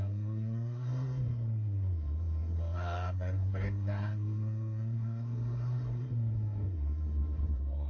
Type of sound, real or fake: fake